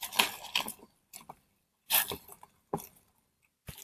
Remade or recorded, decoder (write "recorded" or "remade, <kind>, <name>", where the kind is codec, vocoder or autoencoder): recorded